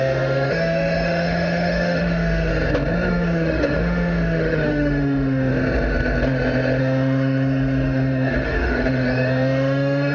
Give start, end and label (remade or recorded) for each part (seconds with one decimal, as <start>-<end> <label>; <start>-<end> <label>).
0.0-2.5 remade; 2.5-3.1 recorded; 3.1-5.5 remade; 5.5-6.8 recorded; 6.8-10.1 remade